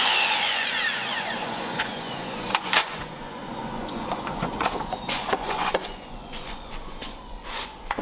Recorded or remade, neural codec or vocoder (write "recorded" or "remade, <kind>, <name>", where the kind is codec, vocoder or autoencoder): remade, vocoder, Vocos